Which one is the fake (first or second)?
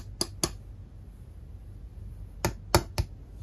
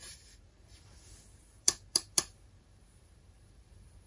second